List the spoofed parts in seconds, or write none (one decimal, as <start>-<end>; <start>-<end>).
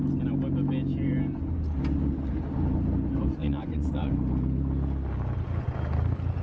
3.4-4.1